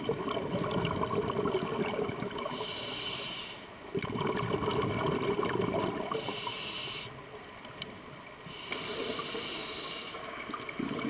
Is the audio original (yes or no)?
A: yes